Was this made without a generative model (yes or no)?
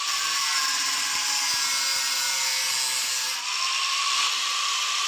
yes